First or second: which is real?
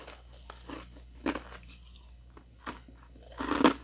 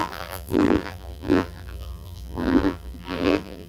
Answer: first